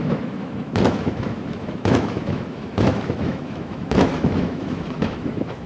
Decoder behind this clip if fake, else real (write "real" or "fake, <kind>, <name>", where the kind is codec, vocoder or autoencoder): fake, autoencoder, DAC-VAE